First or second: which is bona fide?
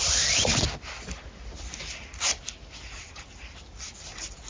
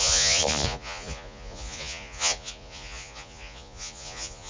first